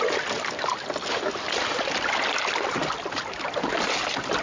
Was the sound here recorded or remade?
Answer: recorded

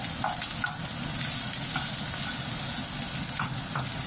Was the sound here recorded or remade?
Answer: recorded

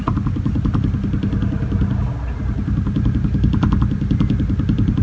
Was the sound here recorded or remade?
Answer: recorded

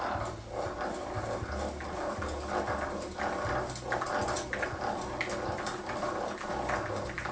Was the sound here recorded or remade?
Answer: recorded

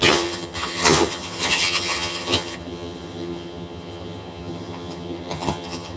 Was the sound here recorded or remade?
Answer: remade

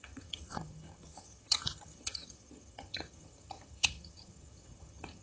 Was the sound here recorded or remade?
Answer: remade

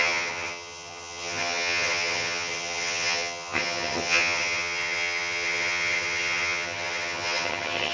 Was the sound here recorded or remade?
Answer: remade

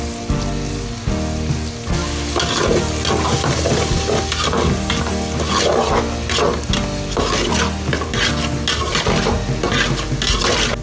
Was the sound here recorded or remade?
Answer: recorded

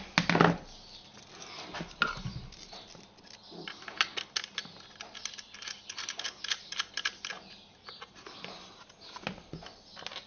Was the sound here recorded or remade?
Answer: recorded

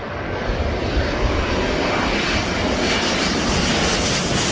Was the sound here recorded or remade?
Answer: recorded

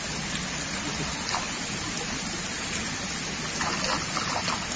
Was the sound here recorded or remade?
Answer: recorded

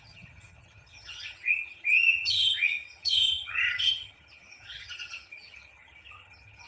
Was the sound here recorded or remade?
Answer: remade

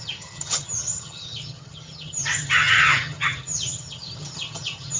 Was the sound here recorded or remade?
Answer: remade